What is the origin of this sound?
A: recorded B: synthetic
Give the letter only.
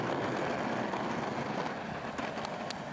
A